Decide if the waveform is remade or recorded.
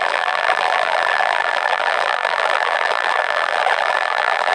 remade